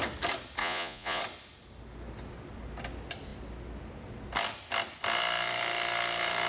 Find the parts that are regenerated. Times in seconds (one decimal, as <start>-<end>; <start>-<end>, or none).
0.6-1.2